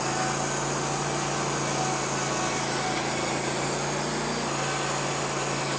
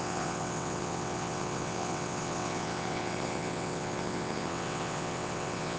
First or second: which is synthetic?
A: second